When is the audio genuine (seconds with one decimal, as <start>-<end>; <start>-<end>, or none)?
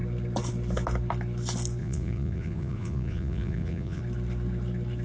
0.0-1.8; 4.0-5.0